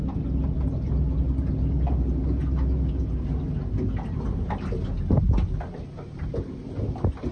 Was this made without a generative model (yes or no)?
yes